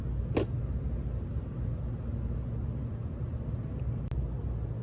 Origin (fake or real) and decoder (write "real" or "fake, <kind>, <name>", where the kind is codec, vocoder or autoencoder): real